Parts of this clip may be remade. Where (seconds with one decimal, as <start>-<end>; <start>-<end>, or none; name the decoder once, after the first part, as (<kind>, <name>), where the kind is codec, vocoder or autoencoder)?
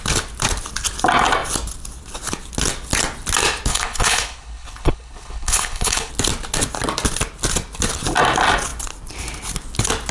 3.7-6.1 (codec, HILCodec)